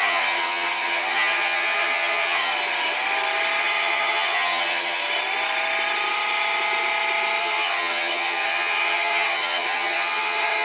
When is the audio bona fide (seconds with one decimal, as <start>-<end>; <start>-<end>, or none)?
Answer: 2.5-3.6; 5.0-7.4